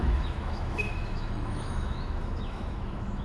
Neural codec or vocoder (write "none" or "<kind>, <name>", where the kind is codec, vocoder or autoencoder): autoencoder, DAC-VAE